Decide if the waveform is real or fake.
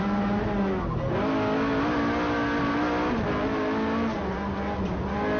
real